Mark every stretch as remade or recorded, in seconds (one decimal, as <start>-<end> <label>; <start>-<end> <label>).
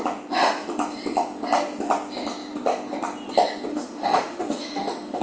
0.0-3.7 recorded; 3.7-5.2 remade